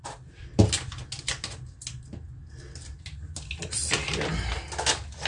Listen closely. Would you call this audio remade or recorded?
recorded